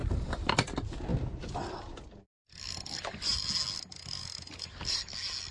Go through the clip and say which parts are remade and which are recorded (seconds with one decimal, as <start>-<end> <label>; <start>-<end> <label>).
0.0-0.5 remade; 0.5-1.1 recorded; 1.1-1.8 remade; 1.8-5.5 recorded